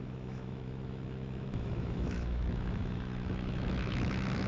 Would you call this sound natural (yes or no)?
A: no